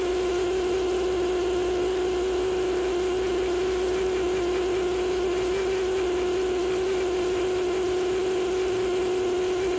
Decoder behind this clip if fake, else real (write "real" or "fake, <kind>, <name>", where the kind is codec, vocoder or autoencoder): real